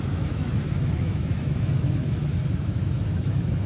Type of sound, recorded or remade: remade